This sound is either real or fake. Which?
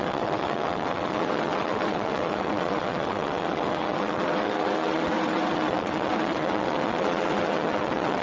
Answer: fake